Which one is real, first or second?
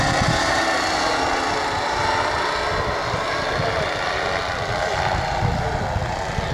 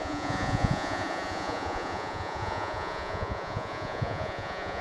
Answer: first